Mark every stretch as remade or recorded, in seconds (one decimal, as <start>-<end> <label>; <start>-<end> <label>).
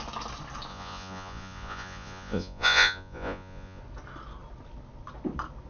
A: 0.0-0.7 recorded; 0.7-3.8 remade; 3.8-5.7 recorded